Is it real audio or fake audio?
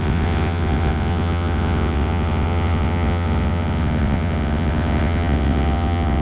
fake